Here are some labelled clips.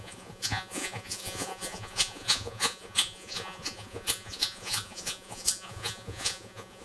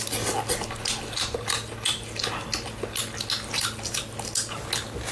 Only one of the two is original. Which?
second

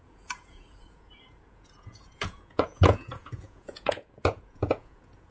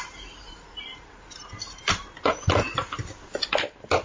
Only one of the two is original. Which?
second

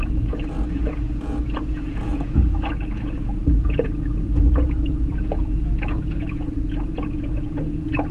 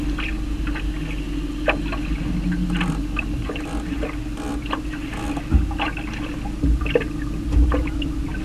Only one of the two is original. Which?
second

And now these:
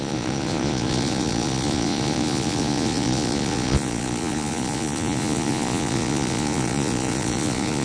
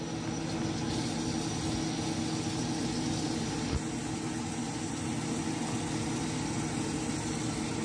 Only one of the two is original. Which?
second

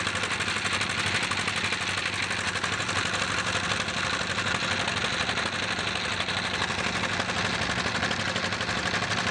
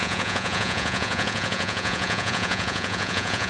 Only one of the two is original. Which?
first